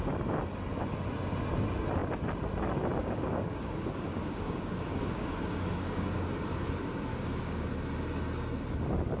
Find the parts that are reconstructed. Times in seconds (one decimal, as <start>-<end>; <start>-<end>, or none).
3.0-6.3; 7.1-7.7